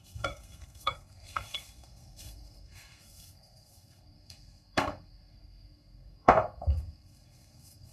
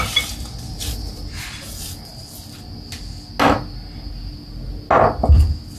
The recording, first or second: second